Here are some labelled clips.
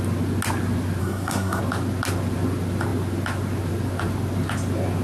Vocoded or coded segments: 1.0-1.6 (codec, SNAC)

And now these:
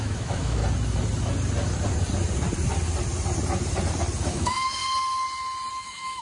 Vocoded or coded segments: 0.0-0.6 (autoencoder, DAC-VAE); 4.3-4.8; 5.7-6.2

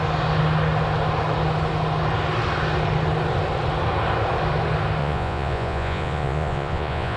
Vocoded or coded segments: 5.0-7.2 (vocoder, Vocos)